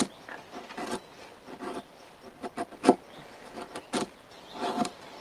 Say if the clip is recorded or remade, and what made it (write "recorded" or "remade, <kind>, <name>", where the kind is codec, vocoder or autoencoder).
recorded